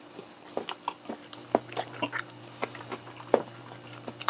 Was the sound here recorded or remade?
recorded